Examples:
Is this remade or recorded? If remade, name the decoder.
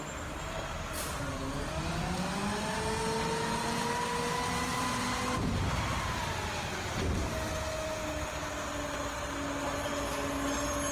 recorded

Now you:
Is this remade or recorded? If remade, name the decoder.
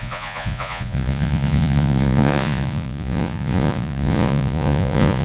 remade, vocoder, Vocos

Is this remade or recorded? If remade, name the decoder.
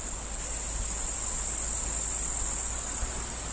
recorded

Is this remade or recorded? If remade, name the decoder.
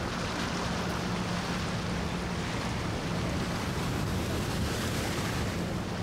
recorded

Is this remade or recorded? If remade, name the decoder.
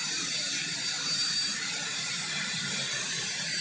remade, vocoder, BigVGAN v2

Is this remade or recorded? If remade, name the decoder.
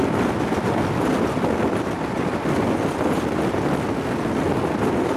recorded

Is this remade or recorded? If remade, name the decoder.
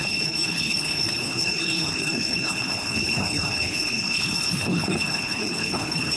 remade, codec, HILCodec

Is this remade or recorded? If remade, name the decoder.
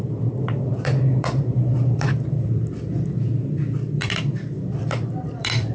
remade, vocoder, BigVGAN v2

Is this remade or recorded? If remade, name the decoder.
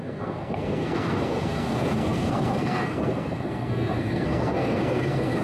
remade, codec, SNAC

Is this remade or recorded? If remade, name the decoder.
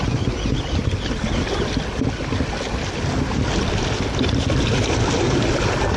recorded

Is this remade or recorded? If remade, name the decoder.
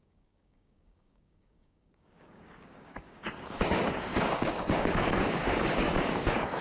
remade, codec, DAC